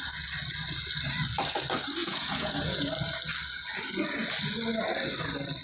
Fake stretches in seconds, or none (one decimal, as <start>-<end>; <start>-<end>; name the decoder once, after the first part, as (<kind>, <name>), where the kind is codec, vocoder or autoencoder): 2.0-2.9 (vocoder, Vocos)